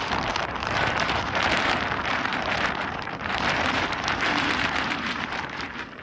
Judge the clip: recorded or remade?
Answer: remade